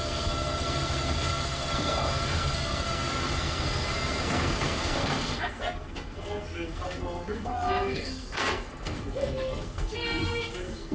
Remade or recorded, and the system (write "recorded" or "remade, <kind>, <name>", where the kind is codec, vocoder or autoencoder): remade, codec, SNAC